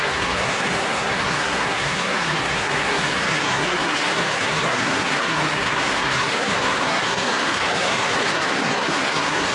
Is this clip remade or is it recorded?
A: remade